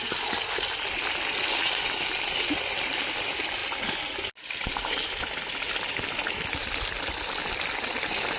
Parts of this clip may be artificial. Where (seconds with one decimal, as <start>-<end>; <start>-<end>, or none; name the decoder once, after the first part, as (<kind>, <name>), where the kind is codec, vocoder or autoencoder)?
none